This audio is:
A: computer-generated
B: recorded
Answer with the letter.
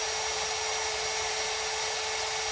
B